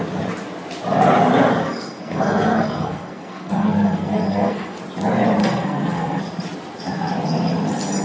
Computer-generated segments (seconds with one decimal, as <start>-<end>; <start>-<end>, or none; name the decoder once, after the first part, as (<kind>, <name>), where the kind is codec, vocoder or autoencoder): 1.6-4.8 (codec, SNAC); 5.4-6.2